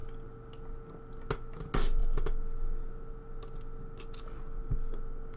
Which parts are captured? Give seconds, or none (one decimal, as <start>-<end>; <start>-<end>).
0.0-5.4